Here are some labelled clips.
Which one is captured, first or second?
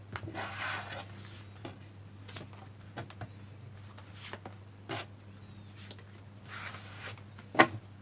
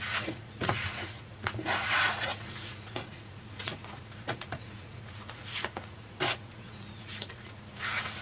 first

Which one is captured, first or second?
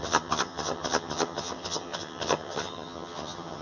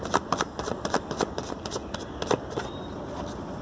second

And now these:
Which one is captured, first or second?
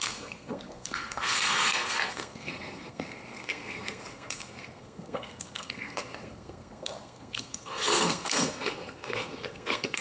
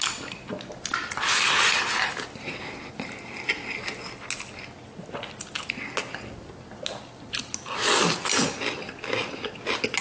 second